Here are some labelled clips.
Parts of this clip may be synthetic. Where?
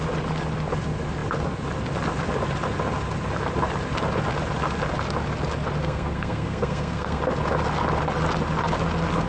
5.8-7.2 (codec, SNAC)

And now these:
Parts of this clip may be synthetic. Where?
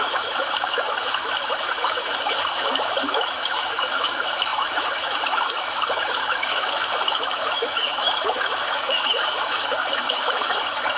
0.0-11.0 (autoencoder, DAC-VAE)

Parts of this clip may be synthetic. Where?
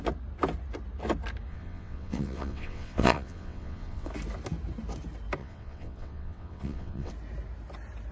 1.5-4.1 (vocoder, WaveNeXt); 5.4-7.1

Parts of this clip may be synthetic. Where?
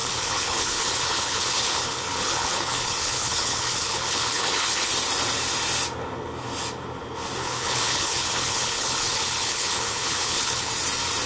0.0-4.9 (codec, HILCodec); 7.4-10.7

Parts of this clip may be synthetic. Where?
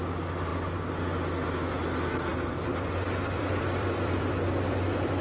2.3-5.2 (vocoder, BigVGAN v2)